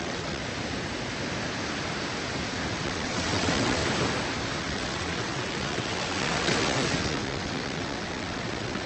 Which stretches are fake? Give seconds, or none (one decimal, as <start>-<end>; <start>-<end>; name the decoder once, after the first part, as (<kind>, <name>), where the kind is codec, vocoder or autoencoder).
0.0-0.4 (vocoder, WaveNeXt); 2.7-3.8; 4.6-8.9